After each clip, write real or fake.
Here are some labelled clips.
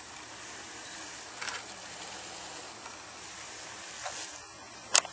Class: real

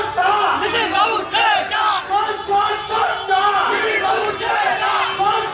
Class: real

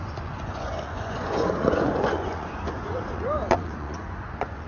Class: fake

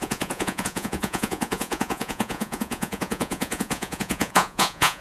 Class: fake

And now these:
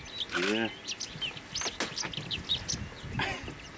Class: real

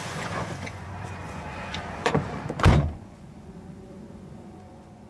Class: fake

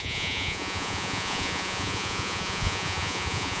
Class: fake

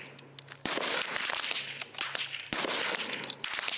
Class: real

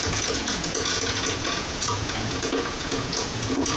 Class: fake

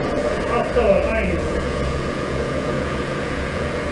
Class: fake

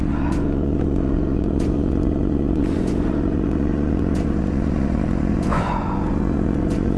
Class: fake